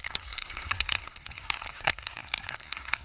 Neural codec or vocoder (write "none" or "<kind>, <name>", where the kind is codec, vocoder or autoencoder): codec, SNAC